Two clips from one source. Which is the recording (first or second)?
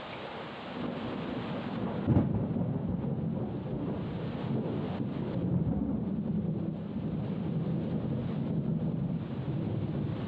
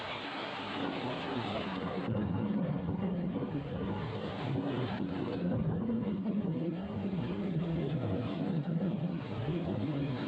first